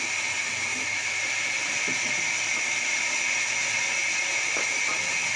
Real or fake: real